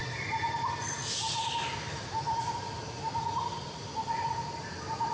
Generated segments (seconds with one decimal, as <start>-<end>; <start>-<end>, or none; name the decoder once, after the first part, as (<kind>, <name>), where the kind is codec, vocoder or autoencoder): none